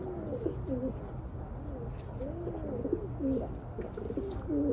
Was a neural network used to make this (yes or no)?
no